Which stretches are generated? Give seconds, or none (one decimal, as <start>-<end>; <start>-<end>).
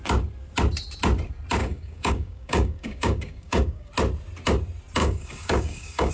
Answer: 1.6-3.9; 5.0-6.1